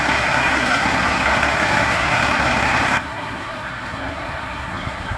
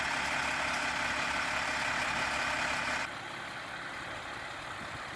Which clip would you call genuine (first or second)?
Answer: second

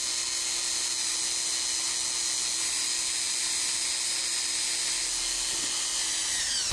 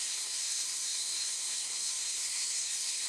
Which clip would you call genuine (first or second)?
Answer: first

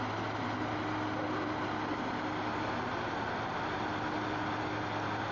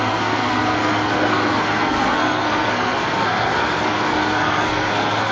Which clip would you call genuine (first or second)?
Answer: first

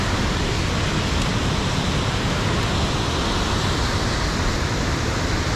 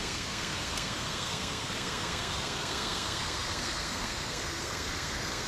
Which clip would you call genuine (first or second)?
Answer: first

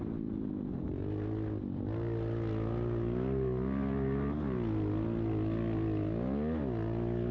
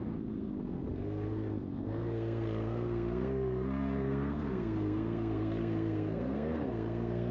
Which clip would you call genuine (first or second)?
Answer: first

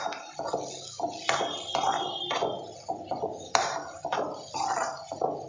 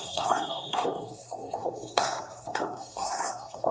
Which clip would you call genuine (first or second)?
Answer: first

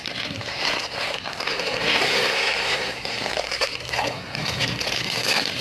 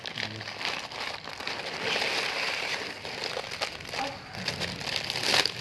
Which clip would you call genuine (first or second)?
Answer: second